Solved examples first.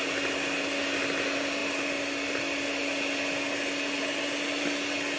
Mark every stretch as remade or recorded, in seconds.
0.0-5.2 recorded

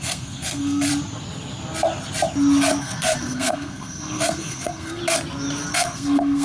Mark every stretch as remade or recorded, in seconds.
0.0-0.9 remade; 0.9-2.8 recorded; 2.8-5.0 remade; 5.0-5.7 recorded; 5.7-6.4 remade

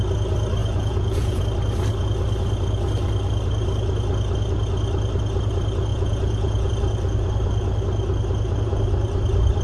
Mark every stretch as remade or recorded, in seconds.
0.0-0.6 recorded; 0.6-1.4 remade; 1.4-5.9 recorded; 5.9-6.7 remade; 6.7-9.6 recorded